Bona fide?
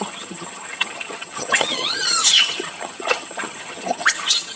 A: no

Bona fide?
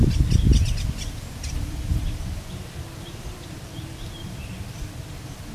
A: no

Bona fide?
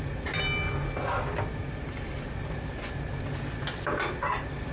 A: yes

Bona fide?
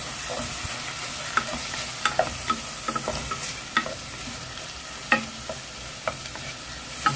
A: yes